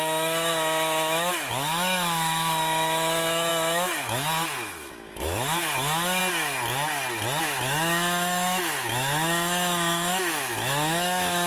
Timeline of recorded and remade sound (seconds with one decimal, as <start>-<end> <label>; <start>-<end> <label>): 0.0-6.2 remade; 6.2-7.4 recorded; 7.4-11.5 remade